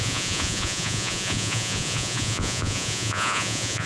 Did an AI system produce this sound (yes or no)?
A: yes